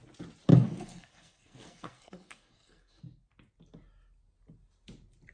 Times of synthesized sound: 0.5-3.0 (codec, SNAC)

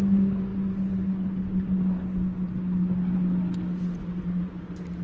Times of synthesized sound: none

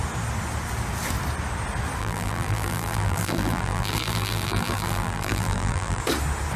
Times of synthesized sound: 2.0-6.0 (vocoder, BigVGAN v2)

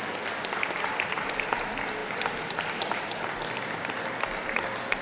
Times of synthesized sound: 0.0-0.6 (vocoder, BigVGAN v2)

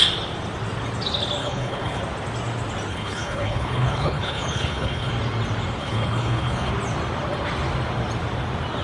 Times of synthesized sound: 1.4-2.0 (codec, HILCodec); 2.9-5.1; 5.8-6.7

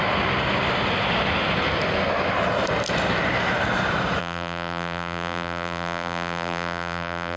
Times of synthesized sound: 4.2-7.4 (vocoder, BigVGAN v2)